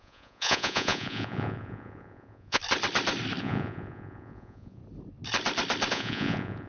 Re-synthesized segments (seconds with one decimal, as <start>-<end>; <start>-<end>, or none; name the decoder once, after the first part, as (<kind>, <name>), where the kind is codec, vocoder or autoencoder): 0.0-2.6 (vocoder, Vocos); 3.4-4.8; 5.9-6.7